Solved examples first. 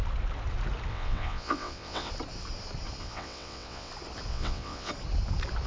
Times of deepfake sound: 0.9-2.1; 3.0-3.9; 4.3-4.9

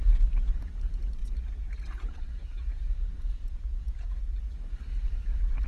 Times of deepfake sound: 1.2-4.4

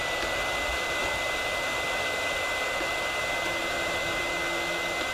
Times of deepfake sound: 3.6-4.2

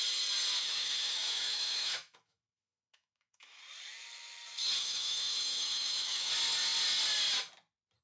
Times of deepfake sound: 0.6-3.6; 4.8-6.3

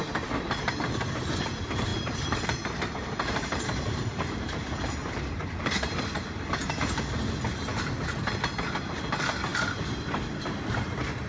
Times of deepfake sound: 1.9-6.7

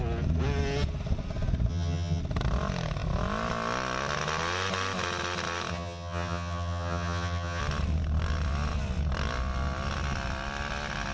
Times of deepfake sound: 1.7-2.2; 5.7-7.6

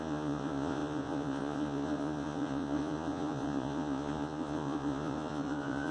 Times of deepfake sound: 0.0-5.9